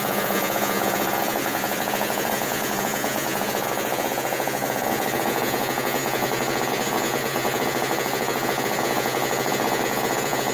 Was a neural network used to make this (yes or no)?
yes